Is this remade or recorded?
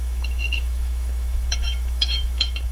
remade